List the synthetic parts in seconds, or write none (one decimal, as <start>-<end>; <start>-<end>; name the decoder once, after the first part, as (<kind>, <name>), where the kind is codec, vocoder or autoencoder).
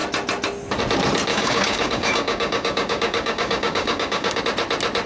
1.3-4.4 (codec, DAC)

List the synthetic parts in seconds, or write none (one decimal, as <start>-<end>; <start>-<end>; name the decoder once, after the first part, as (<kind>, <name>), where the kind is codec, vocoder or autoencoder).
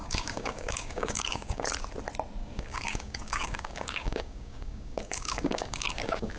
0.0-1.7 (codec, DAC); 2.4-6.4